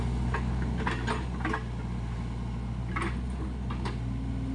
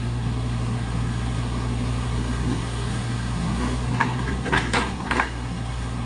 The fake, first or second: second